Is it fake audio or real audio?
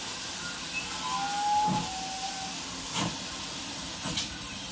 real